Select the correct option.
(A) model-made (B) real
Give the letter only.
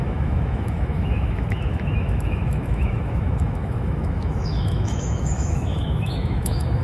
A